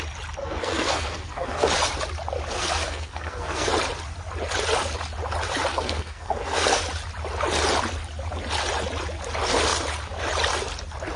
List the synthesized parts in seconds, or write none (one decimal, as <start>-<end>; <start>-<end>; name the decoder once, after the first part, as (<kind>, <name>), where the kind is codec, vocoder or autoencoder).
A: 0.4-1.7 (codec, SNAC); 2.5-3.7; 5.7-6.8